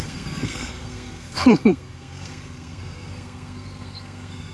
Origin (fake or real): fake